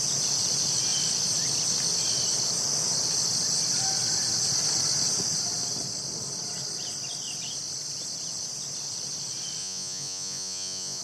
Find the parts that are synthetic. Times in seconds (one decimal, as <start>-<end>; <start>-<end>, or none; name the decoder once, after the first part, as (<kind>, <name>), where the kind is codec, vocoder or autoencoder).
9.6-11.0 (vocoder, Vocos)